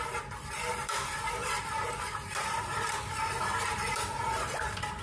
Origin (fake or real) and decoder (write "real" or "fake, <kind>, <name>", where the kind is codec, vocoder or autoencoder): fake, vocoder, BigVGAN v2